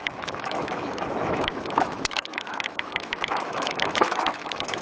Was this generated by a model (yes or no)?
yes